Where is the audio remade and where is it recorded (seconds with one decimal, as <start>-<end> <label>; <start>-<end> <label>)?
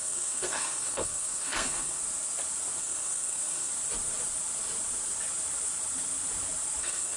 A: 0.0-2.0 remade; 2.0-2.8 recorded; 2.8-3.7 remade; 3.7-6.8 recorded; 6.8-7.2 remade